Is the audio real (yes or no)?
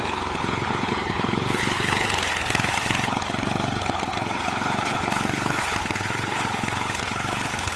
no